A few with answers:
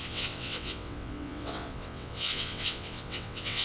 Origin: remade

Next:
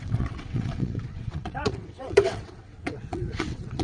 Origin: remade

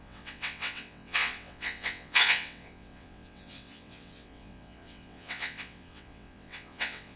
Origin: remade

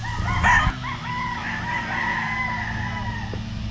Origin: recorded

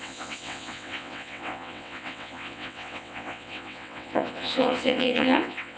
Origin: remade